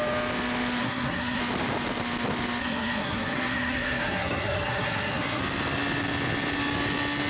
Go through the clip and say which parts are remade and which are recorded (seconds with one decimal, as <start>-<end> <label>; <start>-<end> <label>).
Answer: 0.0-0.8 recorded; 0.8-1.4 remade; 1.4-2.6 recorded; 2.6-5.4 remade; 5.4-7.3 recorded